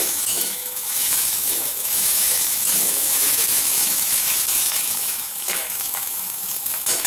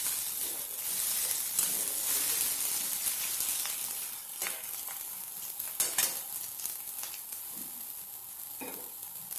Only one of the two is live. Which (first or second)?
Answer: second